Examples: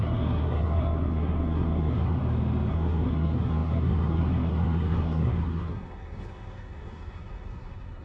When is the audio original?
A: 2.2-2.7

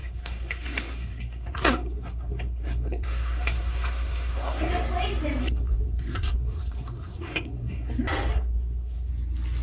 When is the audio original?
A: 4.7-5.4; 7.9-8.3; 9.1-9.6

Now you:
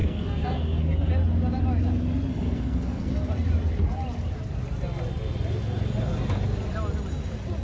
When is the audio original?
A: 1.1-2.3; 3.1-7.6